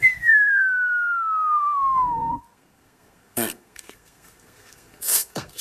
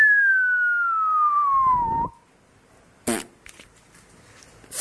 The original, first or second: second